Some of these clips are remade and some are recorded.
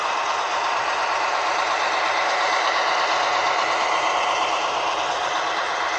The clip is recorded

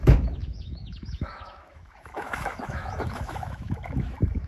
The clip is remade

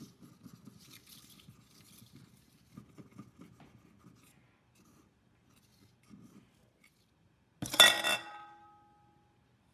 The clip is recorded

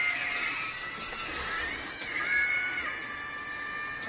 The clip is recorded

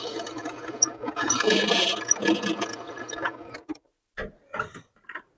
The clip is recorded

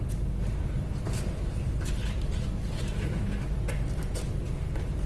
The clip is recorded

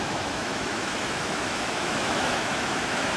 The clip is remade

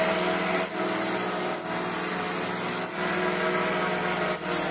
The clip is recorded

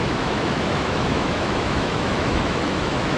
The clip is remade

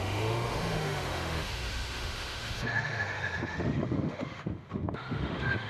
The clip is remade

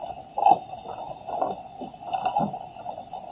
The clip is recorded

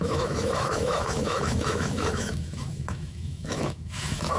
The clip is remade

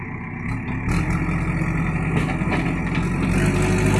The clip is recorded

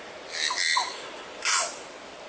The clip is recorded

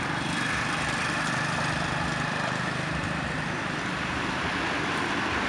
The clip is recorded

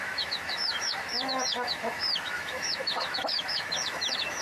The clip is remade